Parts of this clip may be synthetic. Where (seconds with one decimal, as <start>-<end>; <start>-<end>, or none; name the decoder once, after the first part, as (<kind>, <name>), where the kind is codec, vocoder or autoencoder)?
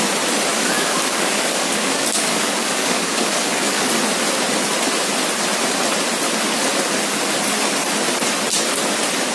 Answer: 0.5-3.9 (codec, DAC)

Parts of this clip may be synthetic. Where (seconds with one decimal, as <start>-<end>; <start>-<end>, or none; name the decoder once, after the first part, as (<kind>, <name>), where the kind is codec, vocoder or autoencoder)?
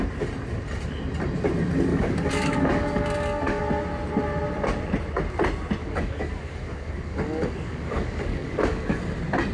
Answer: 1.9-3.6 (codec, DAC); 5.8-9.0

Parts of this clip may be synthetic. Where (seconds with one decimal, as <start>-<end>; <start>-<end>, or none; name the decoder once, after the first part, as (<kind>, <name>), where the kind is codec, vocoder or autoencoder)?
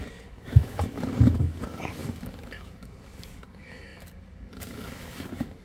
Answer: 0.0-5.6 (codec, DAC)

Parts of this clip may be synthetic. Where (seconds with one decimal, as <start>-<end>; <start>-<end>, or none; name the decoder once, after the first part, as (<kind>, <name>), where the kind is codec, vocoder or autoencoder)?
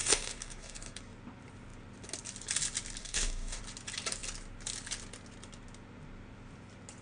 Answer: 0.0-1.0 (codec, DAC); 3.0-3.6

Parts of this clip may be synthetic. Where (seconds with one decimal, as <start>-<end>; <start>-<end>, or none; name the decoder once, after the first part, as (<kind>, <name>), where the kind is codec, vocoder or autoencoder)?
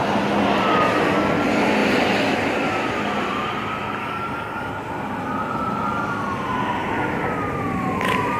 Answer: 4.0-4.7 (codec, DAC)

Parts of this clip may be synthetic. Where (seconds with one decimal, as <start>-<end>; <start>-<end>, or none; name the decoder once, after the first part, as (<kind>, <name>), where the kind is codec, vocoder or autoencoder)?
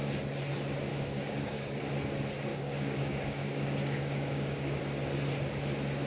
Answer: 0.9-1.8 (codec, DAC); 2.5-4.8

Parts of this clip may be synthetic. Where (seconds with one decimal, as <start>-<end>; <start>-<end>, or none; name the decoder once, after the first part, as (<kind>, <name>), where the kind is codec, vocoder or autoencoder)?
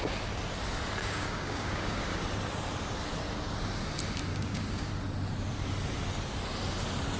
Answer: 1.0-2.2 (codec, DAC); 4.3-4.9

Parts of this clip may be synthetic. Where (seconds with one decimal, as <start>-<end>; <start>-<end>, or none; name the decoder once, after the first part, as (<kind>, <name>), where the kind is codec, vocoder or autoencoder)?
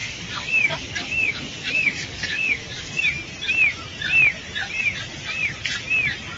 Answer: 0.0-3.0 (codec, DAC)